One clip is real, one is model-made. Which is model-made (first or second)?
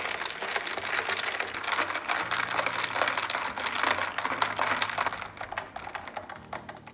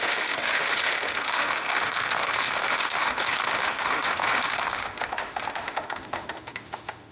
second